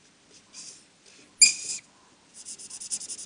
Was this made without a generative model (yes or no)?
yes